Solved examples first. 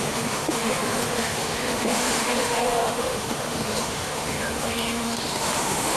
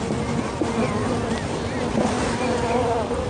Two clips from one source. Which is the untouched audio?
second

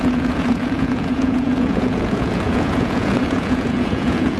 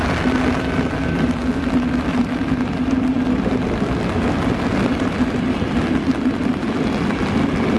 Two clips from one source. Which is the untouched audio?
second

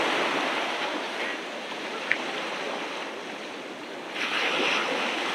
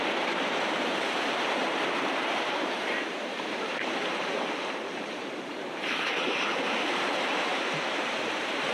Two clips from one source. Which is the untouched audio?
first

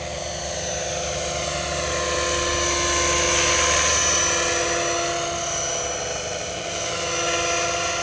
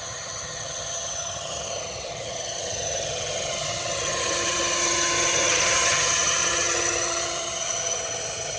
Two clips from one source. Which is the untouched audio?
first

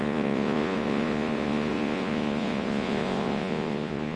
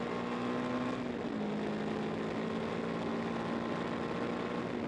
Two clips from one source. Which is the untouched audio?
second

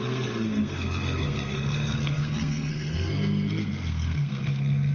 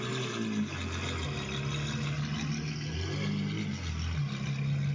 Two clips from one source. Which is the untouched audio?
second